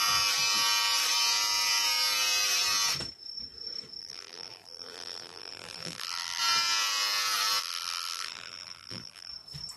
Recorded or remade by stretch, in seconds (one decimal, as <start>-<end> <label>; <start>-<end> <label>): 0.0-4.0 recorded; 4.0-6.4 remade; 6.4-7.6 recorded; 7.6-9.3 remade; 9.3-9.8 recorded

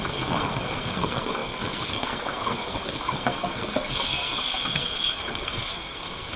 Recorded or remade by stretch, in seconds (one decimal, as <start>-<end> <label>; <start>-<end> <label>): 0.0-6.4 remade

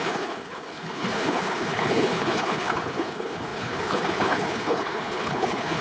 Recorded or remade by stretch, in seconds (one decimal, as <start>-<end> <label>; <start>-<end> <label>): 0.0-5.8 remade

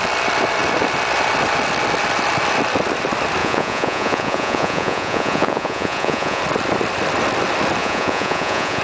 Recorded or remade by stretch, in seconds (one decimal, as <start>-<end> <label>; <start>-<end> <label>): 0.0-3.4 recorded; 3.4-6.4 remade; 6.4-7.8 recorded; 7.8-8.8 remade

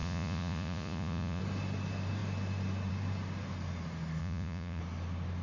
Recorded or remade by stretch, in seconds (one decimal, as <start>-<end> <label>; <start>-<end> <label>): 0.0-1.4 remade; 1.4-4.2 recorded; 4.2-4.8 remade; 4.8-5.4 recorded